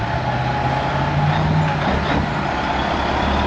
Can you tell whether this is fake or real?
real